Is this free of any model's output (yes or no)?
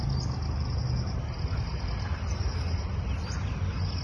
yes